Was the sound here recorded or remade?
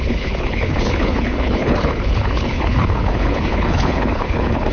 remade